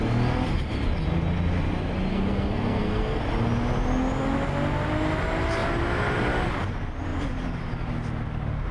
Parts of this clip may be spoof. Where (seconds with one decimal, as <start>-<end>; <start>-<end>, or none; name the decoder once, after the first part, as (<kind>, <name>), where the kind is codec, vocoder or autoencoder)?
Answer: 2.1-3.2 (codec, SNAC)